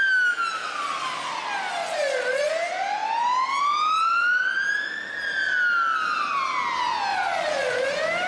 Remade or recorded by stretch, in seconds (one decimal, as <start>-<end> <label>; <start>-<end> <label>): 0.0-1.8 recorded; 1.8-2.5 remade; 2.5-7.1 recorded; 7.1-7.9 remade; 7.9-8.3 recorded